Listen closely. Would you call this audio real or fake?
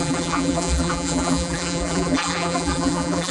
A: fake